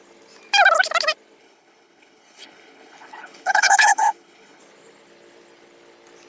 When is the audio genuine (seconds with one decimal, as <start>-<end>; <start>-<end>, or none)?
0.0-1.4; 4.6-6.3